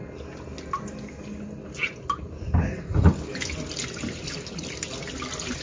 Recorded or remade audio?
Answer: recorded